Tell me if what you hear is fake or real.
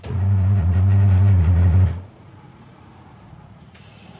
fake